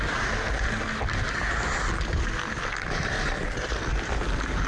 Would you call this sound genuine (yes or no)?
yes